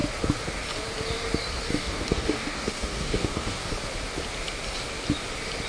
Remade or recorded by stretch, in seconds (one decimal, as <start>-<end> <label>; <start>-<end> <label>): 0.0-1.7 recorded; 1.7-3.7 remade; 3.7-5.7 recorded